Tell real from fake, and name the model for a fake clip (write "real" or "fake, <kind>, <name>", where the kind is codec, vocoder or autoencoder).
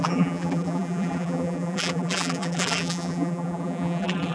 fake, vocoder, BigVGAN v2